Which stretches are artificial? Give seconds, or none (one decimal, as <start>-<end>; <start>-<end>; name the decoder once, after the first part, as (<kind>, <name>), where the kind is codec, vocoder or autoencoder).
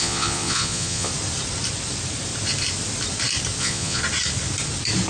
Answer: 0.0-1.1 (vocoder, Vocos); 3.6-4.0